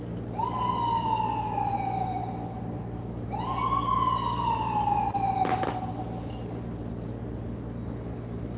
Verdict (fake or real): real